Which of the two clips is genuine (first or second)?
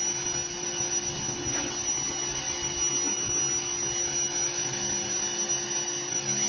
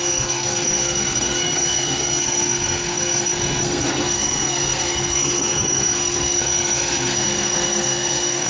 first